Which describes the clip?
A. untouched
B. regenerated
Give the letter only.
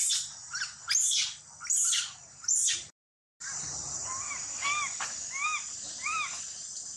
A